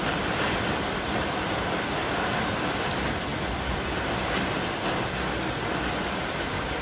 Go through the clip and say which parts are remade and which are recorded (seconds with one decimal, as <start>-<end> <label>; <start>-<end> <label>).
0.0-3.3 remade; 3.3-5.6 recorded; 5.6-6.8 remade